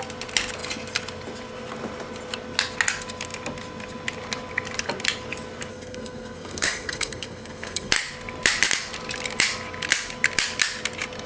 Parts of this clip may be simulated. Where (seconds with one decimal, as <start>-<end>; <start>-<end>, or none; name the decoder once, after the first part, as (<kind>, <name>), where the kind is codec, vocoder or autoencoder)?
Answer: 5.7-7.9 (codec, SNAC)